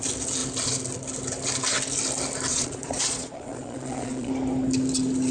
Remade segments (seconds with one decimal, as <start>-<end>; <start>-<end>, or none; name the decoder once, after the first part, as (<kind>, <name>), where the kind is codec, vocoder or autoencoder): 2.5-4.3 (vocoder, Vocos)

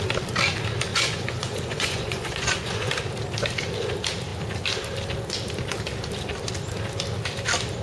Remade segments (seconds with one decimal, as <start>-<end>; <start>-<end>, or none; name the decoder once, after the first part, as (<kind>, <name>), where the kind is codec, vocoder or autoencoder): 0.9-2.9 (vocoder, Vocos)

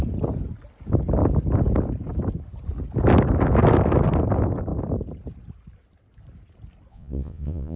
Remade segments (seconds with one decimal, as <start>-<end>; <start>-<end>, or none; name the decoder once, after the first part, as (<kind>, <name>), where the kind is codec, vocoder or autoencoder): 6.9-7.8 (vocoder, Vocos)

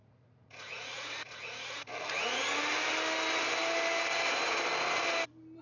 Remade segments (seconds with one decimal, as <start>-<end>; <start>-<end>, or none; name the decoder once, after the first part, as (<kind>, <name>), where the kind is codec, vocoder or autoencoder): 0.0-1.9 (vocoder, Vocos)

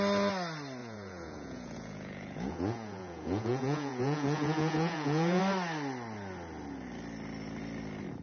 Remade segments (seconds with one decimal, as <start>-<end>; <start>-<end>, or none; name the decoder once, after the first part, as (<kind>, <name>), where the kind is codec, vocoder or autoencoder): 0.8-5.4 (vocoder, Vocos)

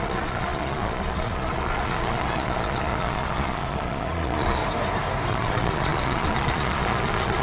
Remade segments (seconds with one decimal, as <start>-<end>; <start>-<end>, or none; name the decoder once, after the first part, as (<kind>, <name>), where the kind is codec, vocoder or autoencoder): 0.0-4.6 (vocoder, Vocos); 5.3-7.4

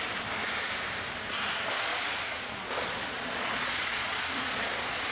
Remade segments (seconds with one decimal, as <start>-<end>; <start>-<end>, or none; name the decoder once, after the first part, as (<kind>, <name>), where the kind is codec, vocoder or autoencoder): 1.9-5.1 (vocoder, Vocos)

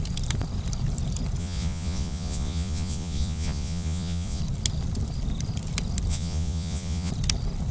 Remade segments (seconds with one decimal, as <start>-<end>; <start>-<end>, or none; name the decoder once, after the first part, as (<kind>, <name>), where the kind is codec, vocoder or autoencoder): 1.4-4.4 (vocoder, Vocos); 6.1-7.1